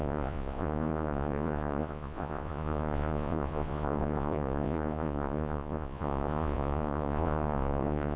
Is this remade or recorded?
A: remade